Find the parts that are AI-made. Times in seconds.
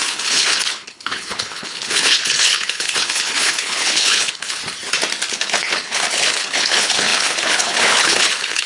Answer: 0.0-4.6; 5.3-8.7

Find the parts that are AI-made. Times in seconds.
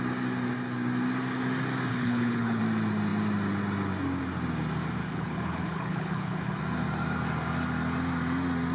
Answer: 1.9-2.6; 5.0-6.6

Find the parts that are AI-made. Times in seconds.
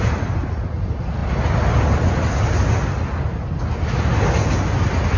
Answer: none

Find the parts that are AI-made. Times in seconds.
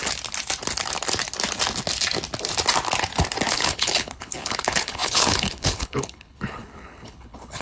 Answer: 3.5-7.6